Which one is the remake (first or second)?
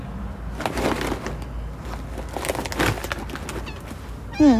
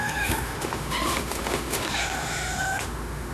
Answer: second